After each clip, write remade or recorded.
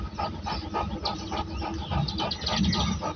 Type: recorded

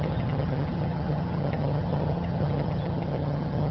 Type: remade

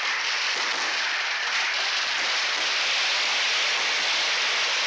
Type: recorded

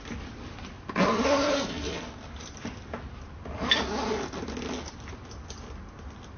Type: recorded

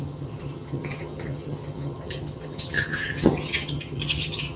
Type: remade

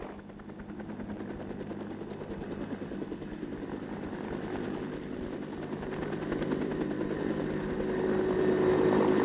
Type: recorded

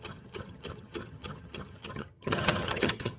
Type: remade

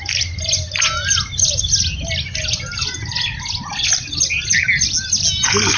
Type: recorded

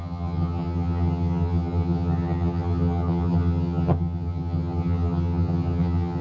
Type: remade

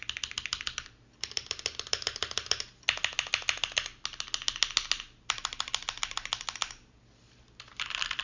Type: recorded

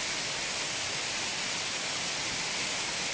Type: recorded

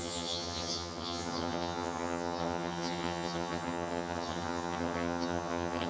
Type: remade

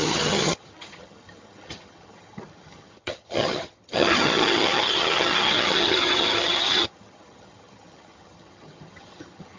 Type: remade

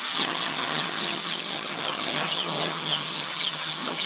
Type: remade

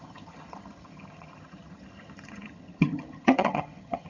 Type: remade